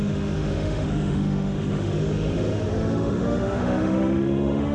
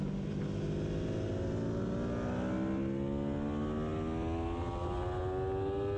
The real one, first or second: second